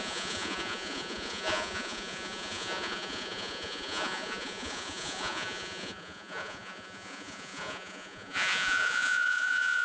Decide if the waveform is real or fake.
fake